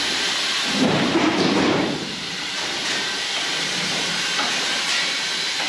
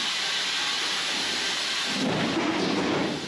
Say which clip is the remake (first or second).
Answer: first